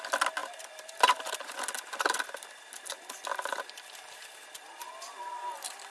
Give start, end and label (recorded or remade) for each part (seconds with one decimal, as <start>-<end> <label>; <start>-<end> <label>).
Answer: 0.0-5.9 recorded

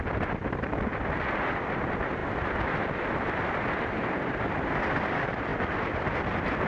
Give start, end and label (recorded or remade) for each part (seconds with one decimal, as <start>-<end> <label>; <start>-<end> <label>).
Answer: 0.0-0.9 remade; 0.9-1.5 recorded; 1.5-5.5 remade; 5.5-6.7 recorded

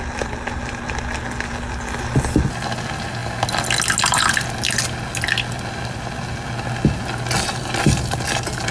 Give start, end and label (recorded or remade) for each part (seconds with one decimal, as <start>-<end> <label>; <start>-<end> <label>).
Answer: 0.0-8.7 recorded

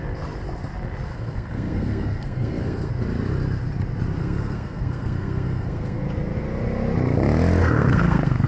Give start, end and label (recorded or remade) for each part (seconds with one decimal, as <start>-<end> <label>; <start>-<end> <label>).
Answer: 0.0-1.1 recorded; 1.1-2.9 remade; 2.9-4.2 recorded; 4.2-6.0 remade; 6.0-7.6 recorded; 7.6-8.5 remade

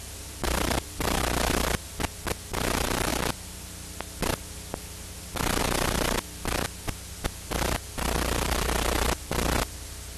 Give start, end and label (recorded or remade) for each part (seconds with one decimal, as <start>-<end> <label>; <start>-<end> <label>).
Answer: 0.0-1.2 remade; 1.2-10.2 recorded

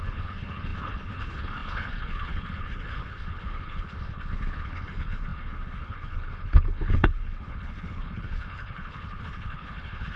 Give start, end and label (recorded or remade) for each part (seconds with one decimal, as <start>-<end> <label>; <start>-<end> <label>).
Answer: 0.0-10.2 remade

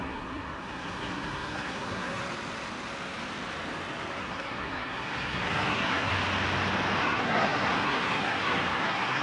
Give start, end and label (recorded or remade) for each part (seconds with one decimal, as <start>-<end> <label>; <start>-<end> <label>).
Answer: 0.0-2.2 remade; 2.2-4.2 recorded; 4.2-6.1 remade; 6.1-7.0 recorded; 7.0-9.2 remade